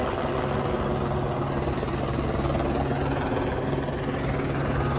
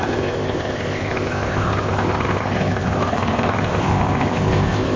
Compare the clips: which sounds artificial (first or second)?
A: second